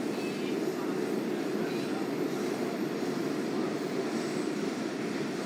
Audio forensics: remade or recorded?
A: recorded